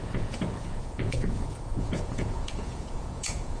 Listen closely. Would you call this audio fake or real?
fake